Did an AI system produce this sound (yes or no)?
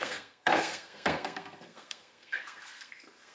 yes